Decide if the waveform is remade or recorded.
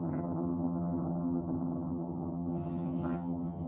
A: remade